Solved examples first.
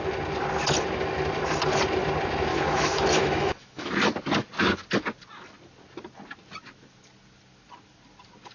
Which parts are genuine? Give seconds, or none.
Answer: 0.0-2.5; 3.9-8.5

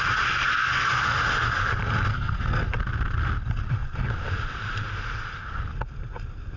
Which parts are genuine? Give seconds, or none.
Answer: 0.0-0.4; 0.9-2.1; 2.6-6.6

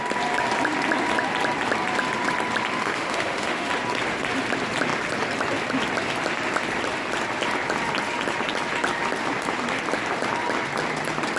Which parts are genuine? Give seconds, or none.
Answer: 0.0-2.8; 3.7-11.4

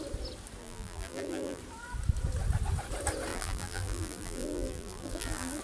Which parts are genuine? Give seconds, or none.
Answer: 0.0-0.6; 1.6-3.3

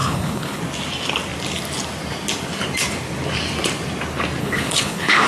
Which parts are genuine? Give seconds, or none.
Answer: 0.6-4.4

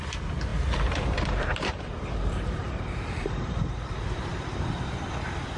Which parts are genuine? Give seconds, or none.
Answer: 4.3-5.6